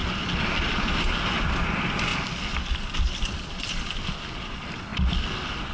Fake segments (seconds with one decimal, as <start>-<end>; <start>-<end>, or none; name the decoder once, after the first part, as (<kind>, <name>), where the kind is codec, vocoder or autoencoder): none